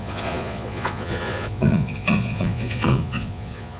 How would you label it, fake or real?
fake